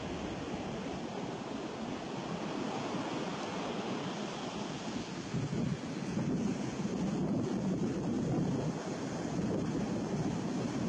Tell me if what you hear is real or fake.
real